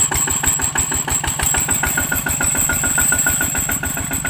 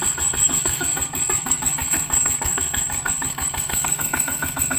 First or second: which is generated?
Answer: second